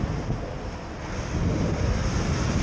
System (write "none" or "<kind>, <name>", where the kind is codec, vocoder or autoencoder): none